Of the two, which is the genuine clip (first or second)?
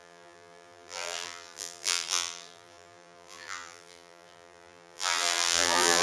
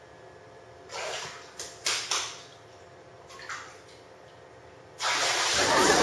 second